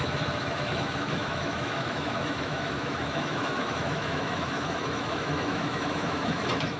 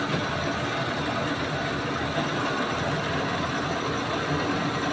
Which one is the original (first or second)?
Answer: second